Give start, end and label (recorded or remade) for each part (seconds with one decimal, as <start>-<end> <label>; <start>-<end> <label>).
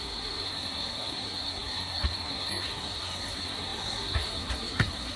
0.0-5.2 remade